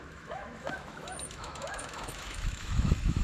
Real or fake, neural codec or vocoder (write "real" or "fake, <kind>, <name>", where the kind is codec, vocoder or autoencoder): fake, autoencoder, DAC-VAE